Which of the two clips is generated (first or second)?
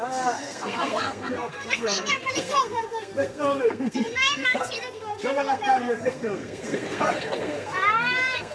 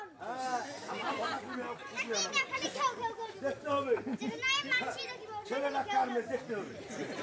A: first